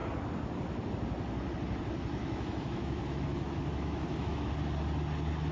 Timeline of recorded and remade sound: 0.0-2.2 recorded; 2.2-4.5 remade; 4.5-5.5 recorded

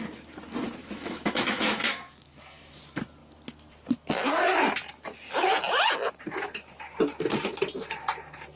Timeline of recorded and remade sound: 0.0-0.8 recorded; 0.8-2.8 remade; 2.8-8.6 recorded

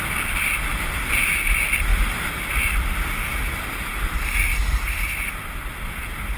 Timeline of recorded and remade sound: 0.0-6.4 recorded

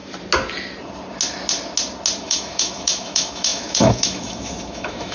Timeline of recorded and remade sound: 0.0-2.2 recorded; 2.2-5.1 remade

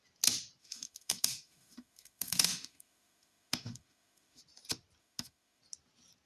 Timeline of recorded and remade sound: 0.0-0.6 recorded; 0.6-4.4 remade; 4.4-5.0 recorded; 5.0-5.6 remade; 5.6-6.3 recorded